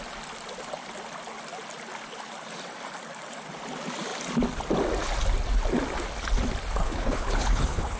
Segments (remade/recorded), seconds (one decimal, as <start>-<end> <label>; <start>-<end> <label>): 0.0-6.8 recorded; 6.8-8.0 remade

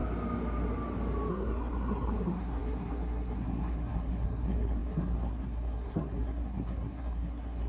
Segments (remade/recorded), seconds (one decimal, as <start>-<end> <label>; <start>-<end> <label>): 0.0-1.3 recorded; 1.3-7.7 remade

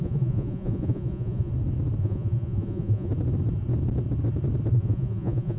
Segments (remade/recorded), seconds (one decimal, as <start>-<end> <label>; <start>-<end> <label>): 0.0-1.5 remade; 1.5-2.0 recorded; 2.0-3.1 remade; 3.1-4.7 recorded; 4.7-5.6 remade